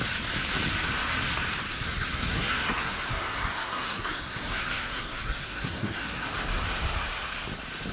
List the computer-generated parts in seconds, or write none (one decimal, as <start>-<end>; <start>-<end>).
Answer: 1.7-6.3

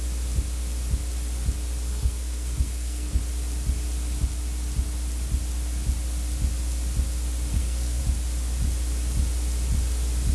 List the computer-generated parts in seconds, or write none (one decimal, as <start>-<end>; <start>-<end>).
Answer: 1.9-3.2; 7.5-8.0